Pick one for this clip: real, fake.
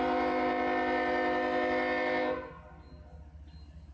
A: real